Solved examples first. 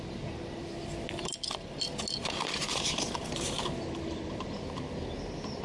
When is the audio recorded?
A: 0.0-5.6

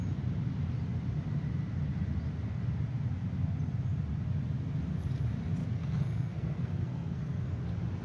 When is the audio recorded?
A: 0.0-5.6; 7.6-8.0